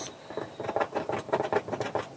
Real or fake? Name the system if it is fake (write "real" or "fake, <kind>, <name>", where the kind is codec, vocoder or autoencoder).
real